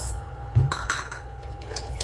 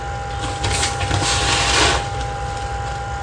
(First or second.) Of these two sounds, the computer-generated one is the first